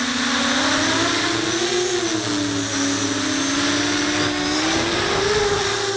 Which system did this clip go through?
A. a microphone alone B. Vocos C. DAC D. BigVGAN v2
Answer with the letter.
A